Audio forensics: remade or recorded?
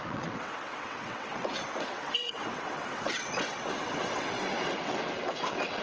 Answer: remade